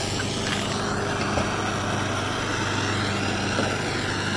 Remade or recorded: recorded